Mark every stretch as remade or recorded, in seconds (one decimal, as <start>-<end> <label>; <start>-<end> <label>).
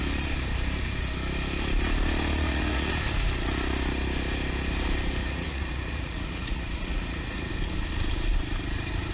0.0-2.3 recorded; 2.3-2.9 remade; 2.9-5.2 recorded; 5.2-7.5 remade; 7.5-9.1 recorded